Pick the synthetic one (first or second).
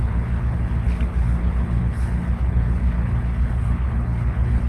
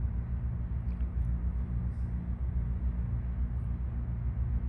first